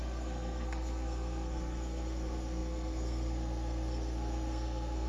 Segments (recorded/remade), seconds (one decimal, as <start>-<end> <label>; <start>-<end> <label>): 0.0-5.1 remade